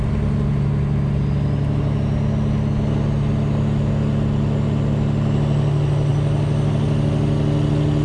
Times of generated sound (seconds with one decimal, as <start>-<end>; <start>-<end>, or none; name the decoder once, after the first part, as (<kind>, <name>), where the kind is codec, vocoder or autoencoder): none

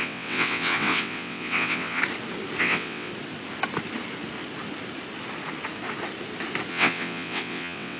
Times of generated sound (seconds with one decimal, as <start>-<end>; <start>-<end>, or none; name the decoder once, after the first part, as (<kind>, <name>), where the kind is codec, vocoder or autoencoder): 0.0-2.0 (vocoder, WaveNeXt); 2.6-3.1; 6.7-8.0

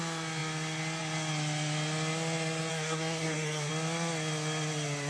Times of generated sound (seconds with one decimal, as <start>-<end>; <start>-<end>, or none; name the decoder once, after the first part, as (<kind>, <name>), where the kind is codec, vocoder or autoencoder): 2.7-3.7 (codec, SNAC)

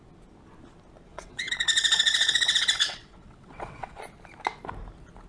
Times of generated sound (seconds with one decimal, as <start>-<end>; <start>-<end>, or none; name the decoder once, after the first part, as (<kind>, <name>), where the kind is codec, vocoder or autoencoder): 1.1-4.0 (vocoder, WaveNeXt)

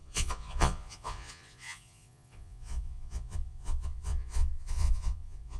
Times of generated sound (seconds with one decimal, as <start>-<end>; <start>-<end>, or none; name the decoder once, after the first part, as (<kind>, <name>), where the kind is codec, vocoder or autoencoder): 0.0-5.6 (vocoder, Vocos)